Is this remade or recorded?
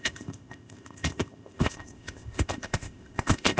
remade